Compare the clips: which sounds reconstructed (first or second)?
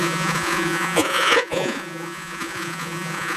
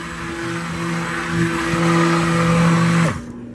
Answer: first